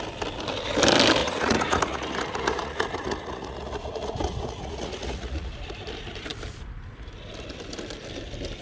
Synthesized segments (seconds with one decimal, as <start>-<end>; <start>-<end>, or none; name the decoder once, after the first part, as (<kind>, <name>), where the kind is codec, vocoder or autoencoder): 1.2-5.5 (vocoder, Vocos)